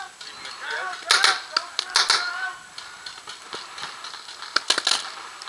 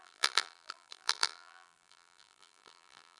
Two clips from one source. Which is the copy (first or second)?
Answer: second